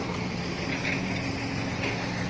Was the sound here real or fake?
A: real